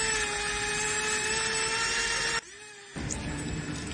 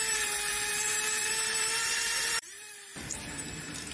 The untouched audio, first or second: first